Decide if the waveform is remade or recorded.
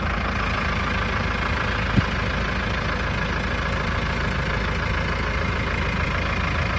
recorded